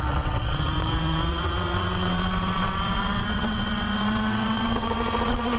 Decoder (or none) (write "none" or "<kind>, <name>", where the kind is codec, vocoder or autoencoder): vocoder, WaveNeXt